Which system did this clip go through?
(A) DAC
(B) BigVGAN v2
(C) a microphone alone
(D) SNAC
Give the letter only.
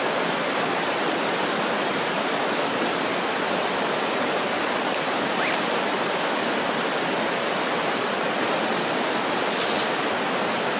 C